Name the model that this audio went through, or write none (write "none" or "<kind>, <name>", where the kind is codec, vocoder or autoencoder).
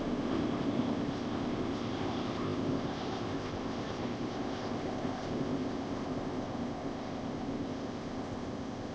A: codec, ZipCodec